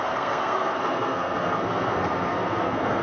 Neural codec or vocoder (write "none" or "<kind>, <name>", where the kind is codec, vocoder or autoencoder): codec, SNAC